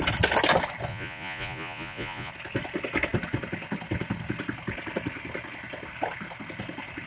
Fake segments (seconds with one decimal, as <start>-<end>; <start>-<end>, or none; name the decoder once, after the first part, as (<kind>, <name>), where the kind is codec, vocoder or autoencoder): 0.9-2.3 (vocoder, Vocos)